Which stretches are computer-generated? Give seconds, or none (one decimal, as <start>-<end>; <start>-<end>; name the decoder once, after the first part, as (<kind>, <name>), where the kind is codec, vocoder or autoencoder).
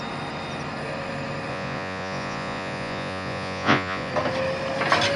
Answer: 1.5-4.1 (vocoder, Vocos)